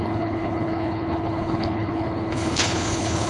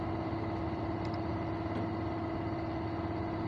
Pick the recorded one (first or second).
second